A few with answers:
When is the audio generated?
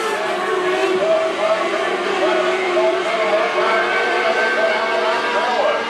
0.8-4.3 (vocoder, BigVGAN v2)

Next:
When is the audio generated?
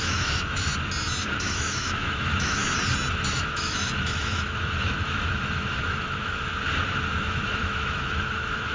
0.0-0.7 (autoencoder, DAC-VAE); 1.2-2.6; 3.3-6.5; 7.1-8.7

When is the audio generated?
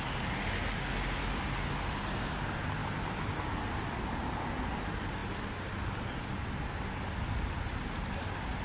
none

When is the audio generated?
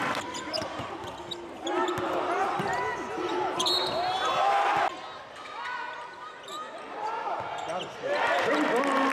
none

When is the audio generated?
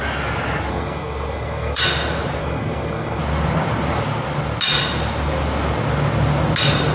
0.7-1.8 (codec, SNAC); 2.4-3.2